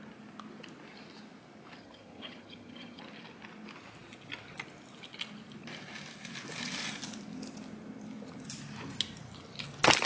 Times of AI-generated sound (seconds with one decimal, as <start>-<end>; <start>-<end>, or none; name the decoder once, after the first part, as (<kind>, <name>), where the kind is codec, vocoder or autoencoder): 1.8-3.0 (vocoder, HiFi-GAN)